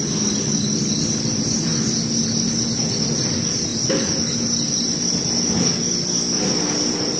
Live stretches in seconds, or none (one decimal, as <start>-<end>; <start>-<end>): 0.0-7.2